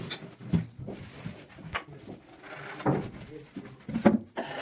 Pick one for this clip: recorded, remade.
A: recorded